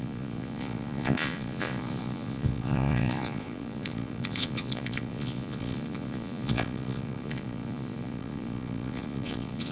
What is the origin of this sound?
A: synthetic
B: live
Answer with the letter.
A